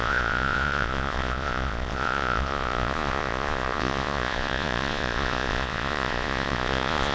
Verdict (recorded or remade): remade